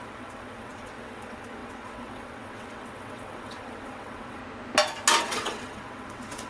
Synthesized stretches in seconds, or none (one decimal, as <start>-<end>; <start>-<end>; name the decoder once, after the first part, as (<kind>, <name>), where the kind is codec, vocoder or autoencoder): 0.0-4.4 (vocoder, WaveNeXt); 5.2-6.5